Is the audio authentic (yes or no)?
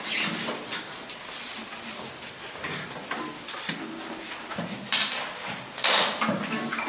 yes